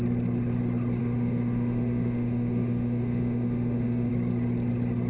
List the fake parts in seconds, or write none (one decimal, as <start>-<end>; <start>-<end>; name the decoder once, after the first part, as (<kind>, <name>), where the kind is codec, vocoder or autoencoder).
1.0-4.1 (autoencoder, DAC-VAE)